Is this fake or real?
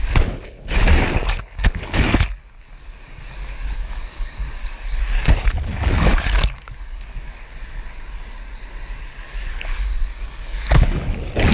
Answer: fake